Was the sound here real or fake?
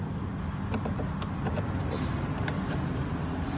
real